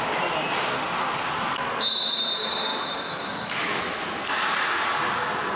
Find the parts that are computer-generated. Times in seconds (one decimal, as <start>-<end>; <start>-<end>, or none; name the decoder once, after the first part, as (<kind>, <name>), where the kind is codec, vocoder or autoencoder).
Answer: 2.7-3.8 (autoencoder, DAC-VAE)